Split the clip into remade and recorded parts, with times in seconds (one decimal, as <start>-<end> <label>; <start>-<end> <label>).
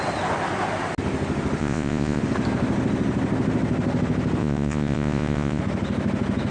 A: 0.0-1.6 recorded; 1.6-2.2 remade; 2.2-4.4 recorded; 4.4-5.6 remade; 5.6-6.5 recorded